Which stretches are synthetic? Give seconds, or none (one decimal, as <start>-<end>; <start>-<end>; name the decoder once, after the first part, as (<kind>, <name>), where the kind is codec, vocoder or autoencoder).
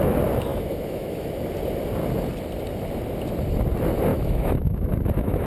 0.5-1.4 (autoencoder, DAC-VAE); 4.1-5.5